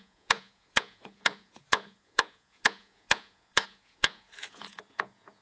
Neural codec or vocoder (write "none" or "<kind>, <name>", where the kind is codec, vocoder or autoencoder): vocoder, Vocos